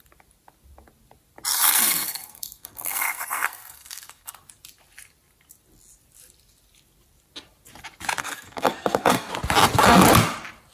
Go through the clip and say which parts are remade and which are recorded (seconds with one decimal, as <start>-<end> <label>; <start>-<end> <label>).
0.0-1.5 recorded; 1.5-4.3 remade; 4.3-8.2 recorded; 8.2-9.3 remade; 9.3-10.7 recorded